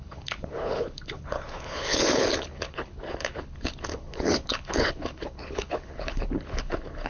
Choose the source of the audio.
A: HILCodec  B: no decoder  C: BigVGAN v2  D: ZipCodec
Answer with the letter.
A